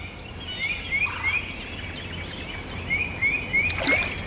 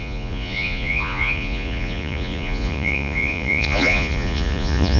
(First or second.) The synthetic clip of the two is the second